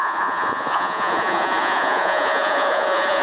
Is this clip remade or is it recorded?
remade